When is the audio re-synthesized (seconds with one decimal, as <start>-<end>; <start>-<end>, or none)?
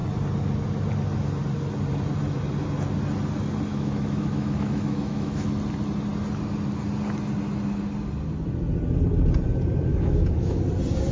3.7-5.6; 9.9-10.6